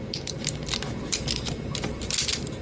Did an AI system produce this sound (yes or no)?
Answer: no